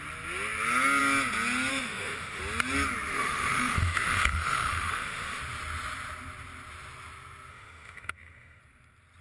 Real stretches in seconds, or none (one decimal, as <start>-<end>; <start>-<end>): 0.0-1.7; 2.4-3.1; 5.4-7.5; 8.6-9.2